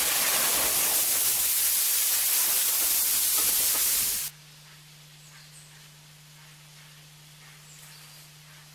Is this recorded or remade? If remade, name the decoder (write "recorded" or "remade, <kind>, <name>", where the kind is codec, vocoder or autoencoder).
recorded